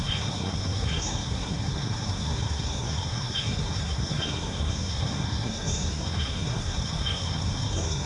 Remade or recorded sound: remade